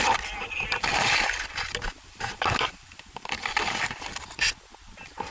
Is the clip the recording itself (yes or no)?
yes